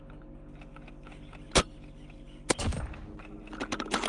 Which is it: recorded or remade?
recorded